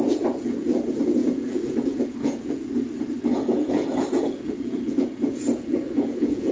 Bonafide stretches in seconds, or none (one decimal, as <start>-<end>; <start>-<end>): 2.7-3.3